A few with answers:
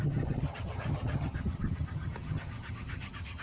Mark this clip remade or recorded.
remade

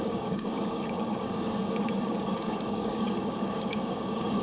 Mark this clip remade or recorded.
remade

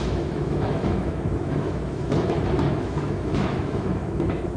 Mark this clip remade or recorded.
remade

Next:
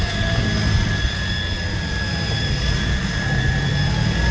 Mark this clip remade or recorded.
recorded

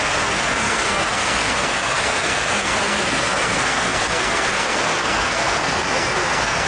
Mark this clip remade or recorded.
remade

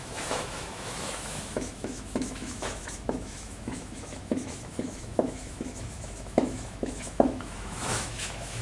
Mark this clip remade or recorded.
remade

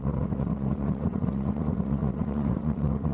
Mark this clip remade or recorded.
remade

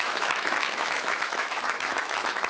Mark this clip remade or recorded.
remade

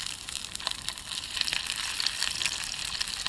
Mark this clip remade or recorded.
remade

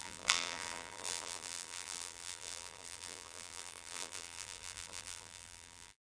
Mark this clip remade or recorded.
remade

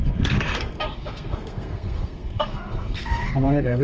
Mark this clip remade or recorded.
remade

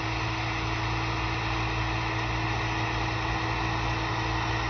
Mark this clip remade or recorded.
recorded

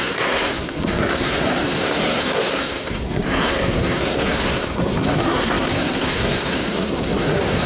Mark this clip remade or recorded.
remade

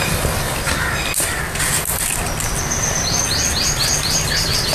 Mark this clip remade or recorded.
recorded